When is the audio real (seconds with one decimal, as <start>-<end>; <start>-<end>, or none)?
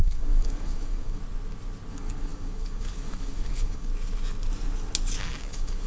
1.2-1.9; 3.9-5.2